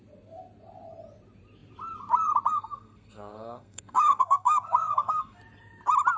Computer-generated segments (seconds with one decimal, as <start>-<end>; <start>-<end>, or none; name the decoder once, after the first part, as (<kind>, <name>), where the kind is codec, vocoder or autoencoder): 2.5-5.4 (codec, SNAC)